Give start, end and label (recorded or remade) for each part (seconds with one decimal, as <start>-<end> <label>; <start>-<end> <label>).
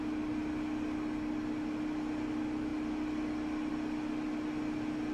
0.0-5.1 recorded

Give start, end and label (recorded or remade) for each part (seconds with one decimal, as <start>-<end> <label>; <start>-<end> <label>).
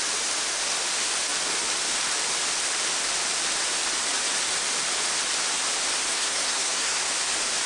0.0-6.1 recorded; 6.1-7.1 remade; 7.1-7.7 recorded